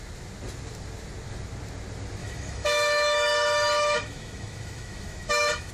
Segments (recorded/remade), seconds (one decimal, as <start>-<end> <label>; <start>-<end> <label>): 0.0-2.2 recorded; 2.2-5.7 remade